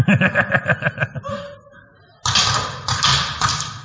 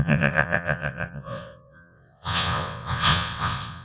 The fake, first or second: second